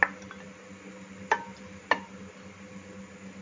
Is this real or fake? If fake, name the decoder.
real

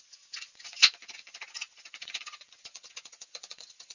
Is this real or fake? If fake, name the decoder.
fake, vocoder, Vocos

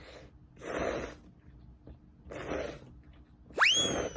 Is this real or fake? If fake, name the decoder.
real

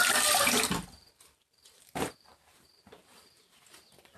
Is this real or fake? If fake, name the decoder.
fake, vocoder, BigVGAN v2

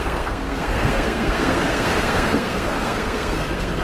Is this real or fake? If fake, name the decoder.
fake, codec, SNAC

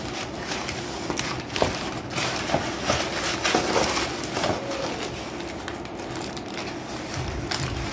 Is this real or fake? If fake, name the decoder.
real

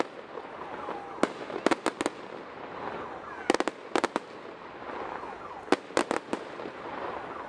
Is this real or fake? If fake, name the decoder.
real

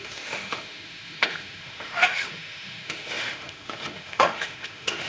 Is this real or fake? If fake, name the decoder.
fake, autoencoder, DAC-VAE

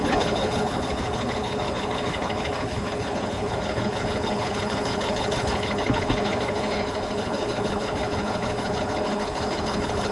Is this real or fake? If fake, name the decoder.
fake, codec, HILCodec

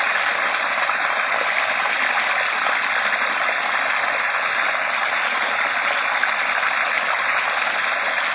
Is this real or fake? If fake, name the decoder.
real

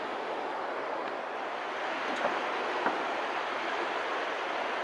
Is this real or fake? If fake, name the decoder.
real